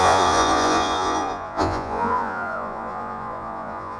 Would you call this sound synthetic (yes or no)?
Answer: yes